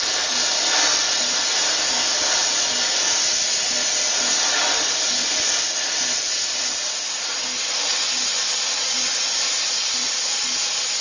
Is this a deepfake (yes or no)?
no